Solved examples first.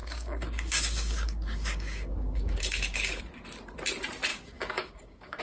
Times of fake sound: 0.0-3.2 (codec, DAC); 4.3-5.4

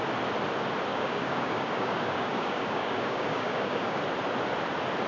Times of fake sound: 0.9-4.0 (codec, DAC)

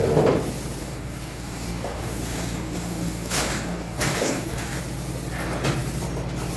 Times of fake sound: 0.8-4.8 (codec, DAC)

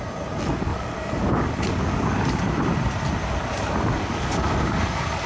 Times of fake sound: 0.7-2.4 (codec, DAC); 3.2-5.3